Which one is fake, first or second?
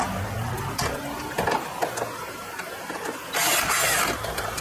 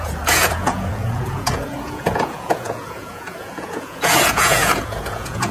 second